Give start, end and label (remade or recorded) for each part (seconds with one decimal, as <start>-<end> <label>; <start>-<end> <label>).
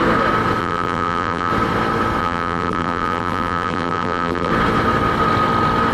0.0-0.6 recorded; 0.6-1.5 remade; 1.5-2.2 recorded; 2.2-4.5 remade; 4.5-5.9 recorded